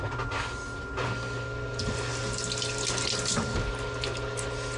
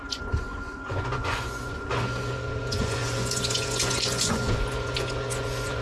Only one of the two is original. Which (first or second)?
first